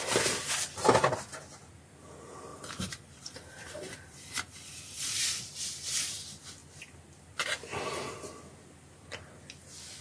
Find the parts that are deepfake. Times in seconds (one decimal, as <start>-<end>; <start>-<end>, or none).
2.5-5.6